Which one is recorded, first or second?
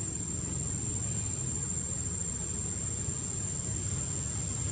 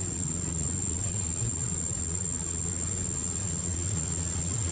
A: first